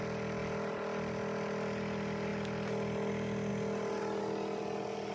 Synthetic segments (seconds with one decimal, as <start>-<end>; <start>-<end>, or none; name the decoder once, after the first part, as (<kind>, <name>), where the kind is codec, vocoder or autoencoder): none